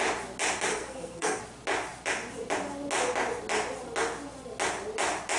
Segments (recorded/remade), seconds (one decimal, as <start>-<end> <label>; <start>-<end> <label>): 0.0-0.7 recorded; 0.7-1.4 remade; 1.4-5.4 recorded